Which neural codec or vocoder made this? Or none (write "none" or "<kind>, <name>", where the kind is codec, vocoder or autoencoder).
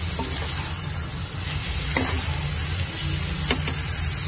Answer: none